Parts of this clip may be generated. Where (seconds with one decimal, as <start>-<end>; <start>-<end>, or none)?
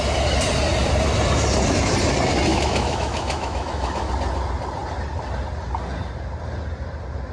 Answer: 2.5-4.1